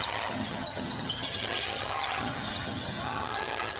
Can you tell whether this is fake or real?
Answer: fake